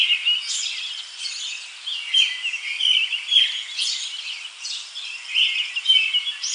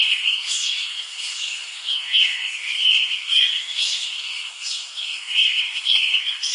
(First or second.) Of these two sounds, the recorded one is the first